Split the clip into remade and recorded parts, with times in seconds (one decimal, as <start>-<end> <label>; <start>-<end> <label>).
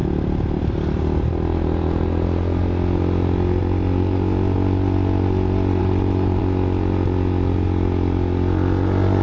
0.0-5.8 recorded; 5.8-6.4 remade; 6.4-9.2 recorded